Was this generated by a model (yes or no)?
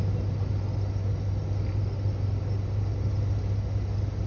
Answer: no